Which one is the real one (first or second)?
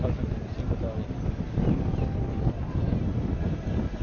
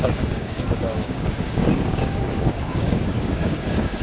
first